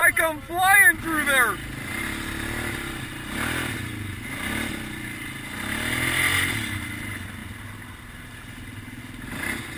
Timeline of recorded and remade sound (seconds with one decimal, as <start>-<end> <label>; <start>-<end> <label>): 0.0-9.8 recorded